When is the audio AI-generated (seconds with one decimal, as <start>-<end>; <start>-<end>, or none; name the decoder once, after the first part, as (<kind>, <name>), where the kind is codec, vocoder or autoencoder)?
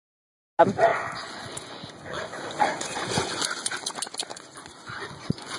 0.9-3.9 (vocoder, Vocos); 4.3-5.6